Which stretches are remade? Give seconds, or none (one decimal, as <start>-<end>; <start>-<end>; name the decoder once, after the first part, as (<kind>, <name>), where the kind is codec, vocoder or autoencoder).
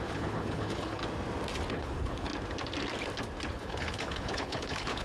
0.0-1.0 (codec, HILCodec); 1.7-2.3; 3.5-5.0